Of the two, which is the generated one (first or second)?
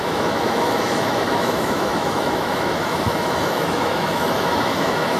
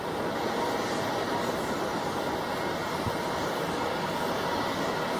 first